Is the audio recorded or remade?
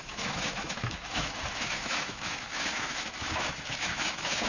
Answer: remade